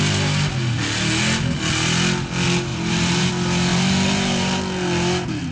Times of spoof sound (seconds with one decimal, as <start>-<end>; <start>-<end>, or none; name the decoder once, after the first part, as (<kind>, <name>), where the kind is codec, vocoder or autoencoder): 2.7-3.3 (vocoder, BigVGAN v2); 3.7-4.6